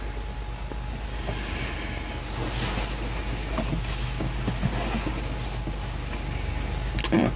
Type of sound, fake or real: real